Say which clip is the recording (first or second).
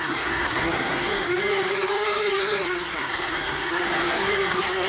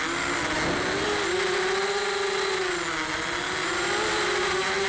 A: second